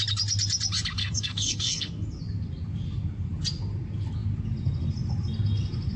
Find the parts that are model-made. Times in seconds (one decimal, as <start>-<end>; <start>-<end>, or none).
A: 1.0-1.9